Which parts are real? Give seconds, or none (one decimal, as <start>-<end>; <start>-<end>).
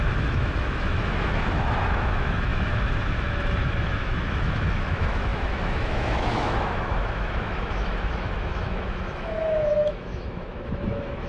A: none